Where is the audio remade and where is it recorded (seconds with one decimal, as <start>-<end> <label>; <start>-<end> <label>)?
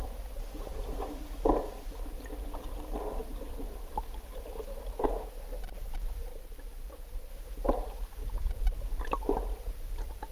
0.0-3.2 recorded; 3.2-3.7 remade; 3.7-6.3 recorded; 6.3-7.3 remade; 7.3-10.3 recorded